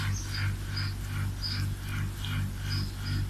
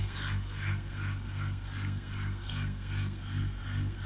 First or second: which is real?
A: first